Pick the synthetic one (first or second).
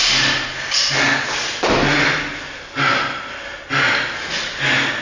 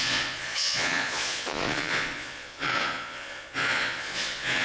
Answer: second